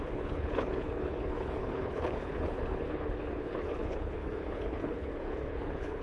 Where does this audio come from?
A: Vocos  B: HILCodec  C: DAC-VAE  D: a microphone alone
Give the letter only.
B